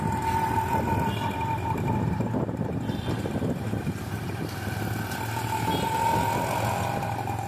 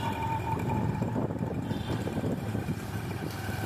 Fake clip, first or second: second